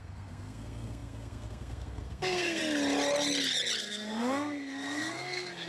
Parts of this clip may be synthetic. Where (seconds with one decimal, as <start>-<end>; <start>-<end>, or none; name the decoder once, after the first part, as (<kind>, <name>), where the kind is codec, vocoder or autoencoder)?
0.0-2.6 (codec, SNAC); 3.8-5.7